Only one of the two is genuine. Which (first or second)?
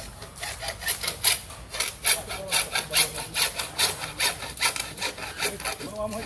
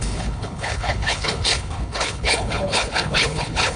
first